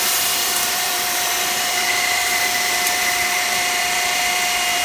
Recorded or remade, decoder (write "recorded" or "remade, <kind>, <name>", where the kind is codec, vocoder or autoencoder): remade, vocoder, BigVGAN v2